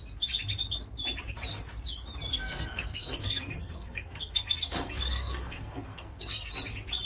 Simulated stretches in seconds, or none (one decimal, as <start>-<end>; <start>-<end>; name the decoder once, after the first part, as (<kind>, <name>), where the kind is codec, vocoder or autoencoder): 2.3-6.5 (codec, SNAC)